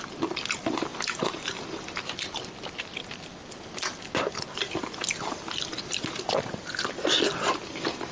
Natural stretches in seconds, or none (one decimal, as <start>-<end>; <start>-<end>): 0.0-8.1

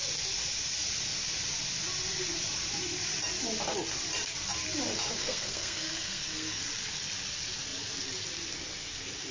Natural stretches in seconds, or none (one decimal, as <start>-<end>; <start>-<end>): 0.0-5.2; 6.6-9.3

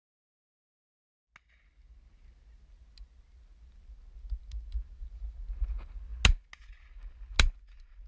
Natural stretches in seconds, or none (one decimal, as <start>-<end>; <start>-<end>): 0.0-8.1

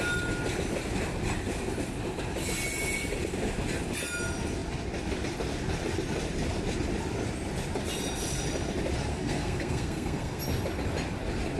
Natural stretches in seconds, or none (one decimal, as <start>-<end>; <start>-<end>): 0.0-9.1; 10.4-11.6

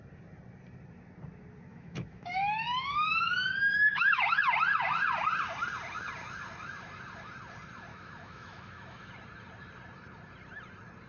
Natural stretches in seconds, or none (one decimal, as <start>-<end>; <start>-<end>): 0.0-1.7; 4.4-7.9; 9.1-11.1